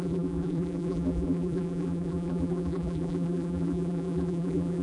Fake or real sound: fake